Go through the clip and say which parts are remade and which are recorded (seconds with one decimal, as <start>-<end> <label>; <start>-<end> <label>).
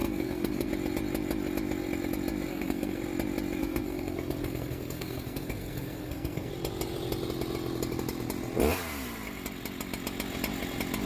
0.0-0.7 remade; 0.7-2.5 recorded; 2.5-3.0 remade; 3.0-3.6 recorded; 3.6-6.5 remade; 6.5-11.1 recorded